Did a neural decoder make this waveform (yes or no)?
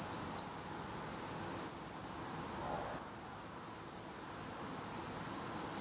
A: no